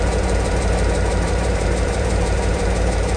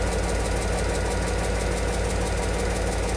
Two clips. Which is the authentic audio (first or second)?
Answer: second